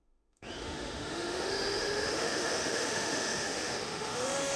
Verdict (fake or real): fake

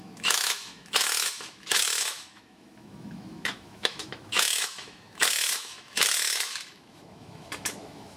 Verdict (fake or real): fake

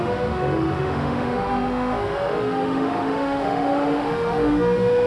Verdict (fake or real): fake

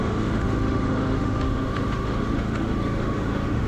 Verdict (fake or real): fake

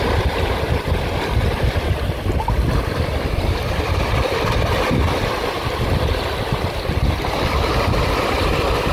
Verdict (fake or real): real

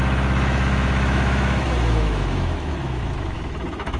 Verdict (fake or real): fake